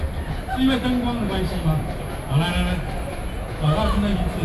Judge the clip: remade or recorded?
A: recorded